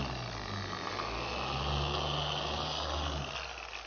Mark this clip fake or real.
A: real